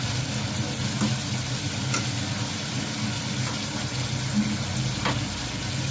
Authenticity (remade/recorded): recorded